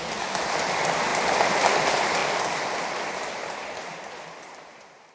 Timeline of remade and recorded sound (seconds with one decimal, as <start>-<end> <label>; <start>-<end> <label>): 0.0-5.1 recorded